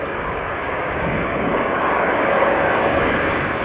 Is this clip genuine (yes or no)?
no